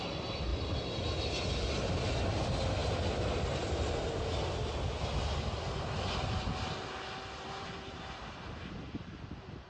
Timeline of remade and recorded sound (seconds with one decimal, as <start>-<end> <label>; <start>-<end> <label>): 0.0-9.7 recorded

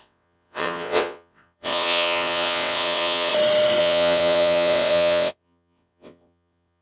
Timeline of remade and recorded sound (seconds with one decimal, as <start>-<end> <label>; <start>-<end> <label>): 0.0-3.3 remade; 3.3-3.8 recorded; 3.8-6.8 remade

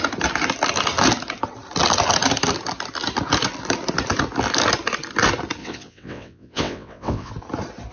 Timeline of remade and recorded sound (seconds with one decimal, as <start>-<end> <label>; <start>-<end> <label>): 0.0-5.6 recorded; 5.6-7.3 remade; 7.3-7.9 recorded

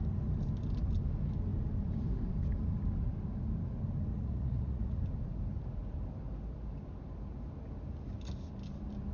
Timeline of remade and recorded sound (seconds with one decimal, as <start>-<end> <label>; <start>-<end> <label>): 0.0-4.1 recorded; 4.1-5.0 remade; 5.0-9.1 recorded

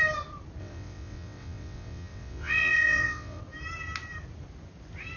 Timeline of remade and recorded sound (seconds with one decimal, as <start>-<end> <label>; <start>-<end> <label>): 0.0-0.6 recorded; 0.6-3.4 remade; 3.4-5.2 recorded

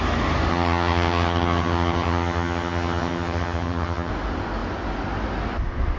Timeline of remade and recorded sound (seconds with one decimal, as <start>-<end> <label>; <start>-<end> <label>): 0.0-0.5 recorded; 0.5-4.1 remade; 4.1-6.0 recorded

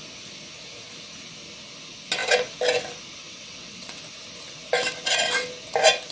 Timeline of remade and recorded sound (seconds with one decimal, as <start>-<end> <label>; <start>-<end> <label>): 0.0-3.2 recorded; 3.2-4.0 remade; 4.0-6.1 recorded

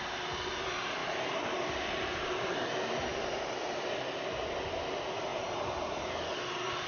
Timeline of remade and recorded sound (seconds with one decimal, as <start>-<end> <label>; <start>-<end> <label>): 0.0-1.0 recorded; 1.0-2.7 remade; 2.7-5.3 recorded; 5.3-6.3 remade; 6.3-6.9 recorded